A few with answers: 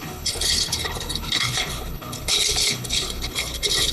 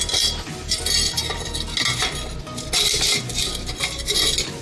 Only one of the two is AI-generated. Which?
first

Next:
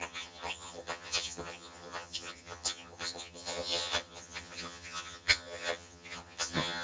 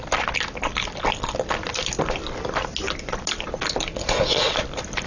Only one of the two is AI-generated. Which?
first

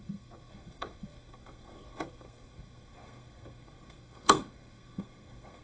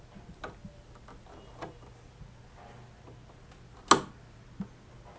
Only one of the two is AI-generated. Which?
first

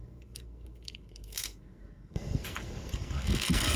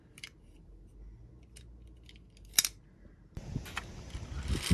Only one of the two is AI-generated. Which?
first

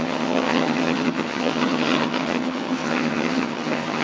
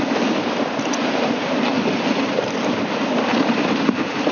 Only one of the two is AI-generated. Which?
first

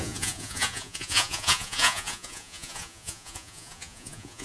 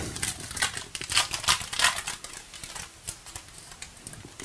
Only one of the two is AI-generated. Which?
first